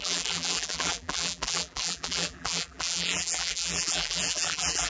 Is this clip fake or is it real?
fake